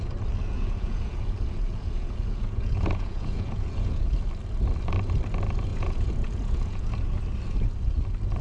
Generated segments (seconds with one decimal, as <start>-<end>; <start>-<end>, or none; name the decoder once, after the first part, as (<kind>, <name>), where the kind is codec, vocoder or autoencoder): 0.5-4.1 (vocoder, Vocos); 5.7-6.9